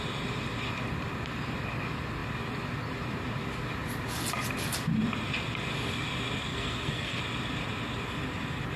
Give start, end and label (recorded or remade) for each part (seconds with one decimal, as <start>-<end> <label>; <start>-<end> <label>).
0.0-6.5 recorded; 6.5-7.2 remade; 7.2-8.8 recorded

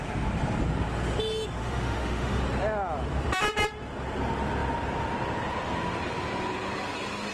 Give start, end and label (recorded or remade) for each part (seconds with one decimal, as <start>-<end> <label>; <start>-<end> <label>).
0.0-1.6 recorded; 1.6-2.4 remade; 2.4-7.3 recorded